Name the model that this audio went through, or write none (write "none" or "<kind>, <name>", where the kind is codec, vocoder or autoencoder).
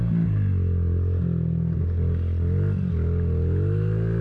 none